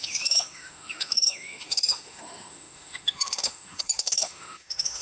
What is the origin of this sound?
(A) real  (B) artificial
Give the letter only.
B